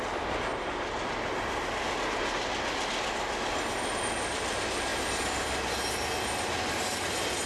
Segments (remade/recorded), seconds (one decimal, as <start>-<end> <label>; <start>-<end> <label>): 0.0-7.5 recorded